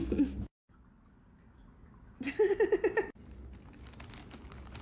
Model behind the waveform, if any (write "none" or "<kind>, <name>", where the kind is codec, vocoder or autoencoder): none